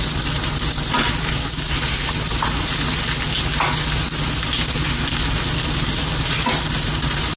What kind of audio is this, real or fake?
real